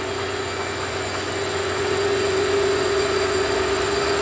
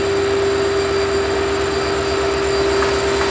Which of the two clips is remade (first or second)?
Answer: first